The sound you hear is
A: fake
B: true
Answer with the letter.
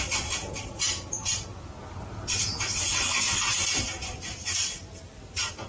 B